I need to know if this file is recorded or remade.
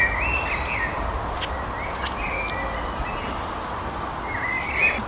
recorded